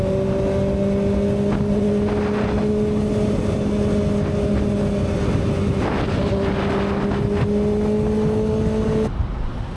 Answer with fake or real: real